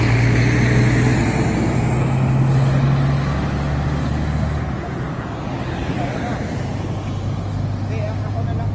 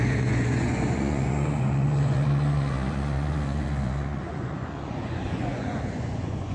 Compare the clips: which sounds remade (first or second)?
second